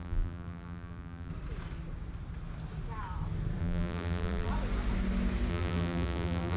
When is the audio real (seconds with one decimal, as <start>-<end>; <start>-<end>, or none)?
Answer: 1.3-3.6; 4.5-5.5